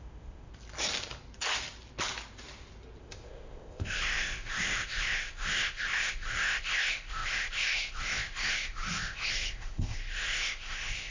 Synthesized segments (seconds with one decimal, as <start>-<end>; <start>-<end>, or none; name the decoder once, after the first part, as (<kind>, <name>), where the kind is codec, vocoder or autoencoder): 0.0-0.5 (codec, ZipCodec); 3.0-11.1